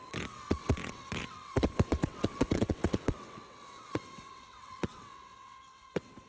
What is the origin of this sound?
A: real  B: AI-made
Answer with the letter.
B